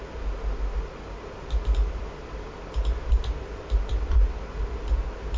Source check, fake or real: real